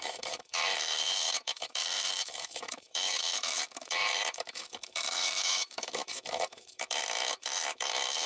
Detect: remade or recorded remade